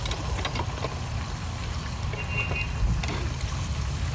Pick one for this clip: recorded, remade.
recorded